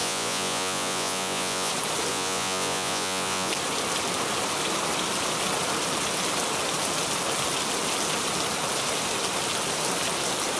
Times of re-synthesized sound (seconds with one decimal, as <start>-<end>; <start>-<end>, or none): 0.0-1.7; 2.1-3.5